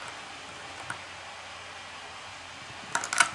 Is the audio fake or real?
real